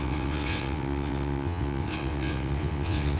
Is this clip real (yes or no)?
no